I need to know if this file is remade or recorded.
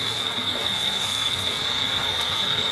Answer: remade